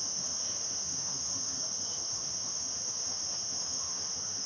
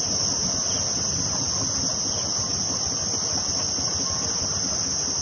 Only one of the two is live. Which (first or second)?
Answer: second